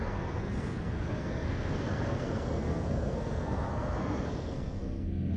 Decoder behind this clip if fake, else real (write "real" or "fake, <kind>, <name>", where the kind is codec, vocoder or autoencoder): fake, codec, SNAC